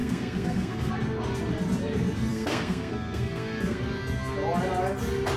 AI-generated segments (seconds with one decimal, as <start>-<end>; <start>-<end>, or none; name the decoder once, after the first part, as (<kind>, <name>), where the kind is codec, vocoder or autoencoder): 0.0-0.9 (codec, SNAC); 2.3-3.8